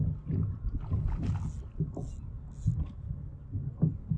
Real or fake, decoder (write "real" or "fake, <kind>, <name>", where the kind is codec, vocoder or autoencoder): real